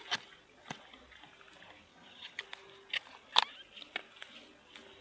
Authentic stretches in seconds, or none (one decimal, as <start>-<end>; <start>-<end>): 0.0-1.9; 2.4-5.0